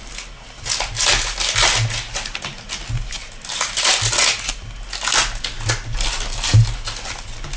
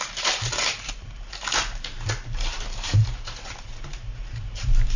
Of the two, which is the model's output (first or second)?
second